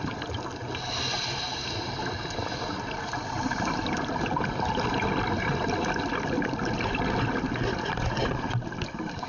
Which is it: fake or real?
real